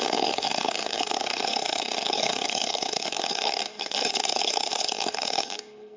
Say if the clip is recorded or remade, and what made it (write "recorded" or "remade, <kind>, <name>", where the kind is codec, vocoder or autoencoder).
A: remade, codec, SNAC